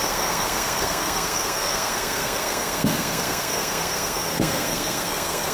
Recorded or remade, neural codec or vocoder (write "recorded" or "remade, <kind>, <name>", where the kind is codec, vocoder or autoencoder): remade, codec, SNAC